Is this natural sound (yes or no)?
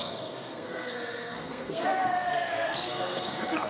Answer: no